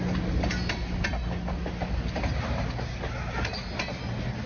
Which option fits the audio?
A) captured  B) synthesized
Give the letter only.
A